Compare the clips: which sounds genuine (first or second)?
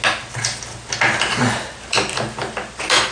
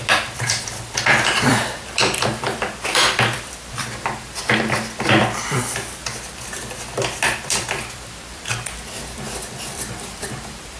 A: first